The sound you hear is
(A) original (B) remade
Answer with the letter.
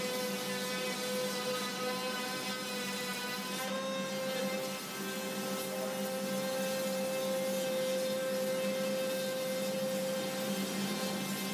A